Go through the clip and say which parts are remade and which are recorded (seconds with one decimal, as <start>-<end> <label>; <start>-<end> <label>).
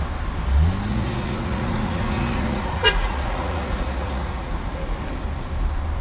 0.0-0.9 recorded; 0.9-4.5 remade; 4.5-6.0 recorded